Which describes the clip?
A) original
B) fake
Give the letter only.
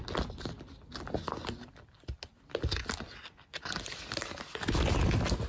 A